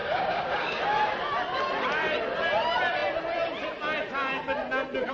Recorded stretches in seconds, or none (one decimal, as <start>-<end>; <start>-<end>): 0.8-5.1